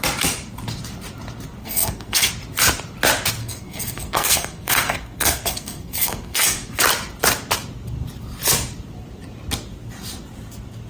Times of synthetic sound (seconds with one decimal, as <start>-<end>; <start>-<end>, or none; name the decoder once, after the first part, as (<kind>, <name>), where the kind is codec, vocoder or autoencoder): 1.6-2.3 (codec, SNAC); 3.4-6.8

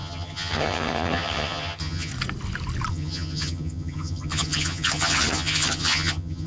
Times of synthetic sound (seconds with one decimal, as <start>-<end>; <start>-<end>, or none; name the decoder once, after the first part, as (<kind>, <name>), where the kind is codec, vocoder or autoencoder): 0.0-2.1 (vocoder, HiFi-GAN); 2.9-6.5

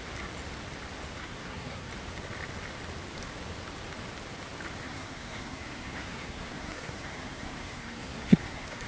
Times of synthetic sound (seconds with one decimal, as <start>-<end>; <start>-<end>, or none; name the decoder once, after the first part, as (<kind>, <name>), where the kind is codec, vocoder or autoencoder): 1.2-1.9 (codec, SNAC); 4.8-8.9

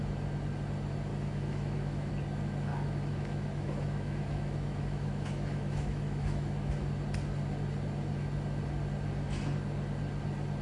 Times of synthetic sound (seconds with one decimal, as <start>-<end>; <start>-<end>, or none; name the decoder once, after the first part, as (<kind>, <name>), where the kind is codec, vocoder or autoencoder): 1.1-2.1 (autoencoder, DAC-VAE); 2.7-6.7

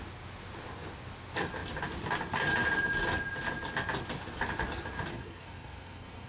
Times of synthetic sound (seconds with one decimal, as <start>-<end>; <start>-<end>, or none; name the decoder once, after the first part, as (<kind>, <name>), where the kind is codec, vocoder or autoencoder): 5.1-6.3 (codec, SNAC)

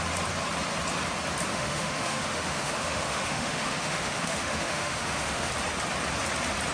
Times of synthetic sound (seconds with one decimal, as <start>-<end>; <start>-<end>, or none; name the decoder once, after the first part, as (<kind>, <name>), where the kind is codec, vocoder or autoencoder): 1.5-5.5 (autoencoder, DAC-VAE)